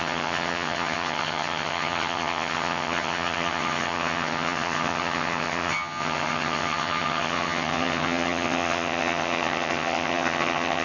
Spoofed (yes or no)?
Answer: yes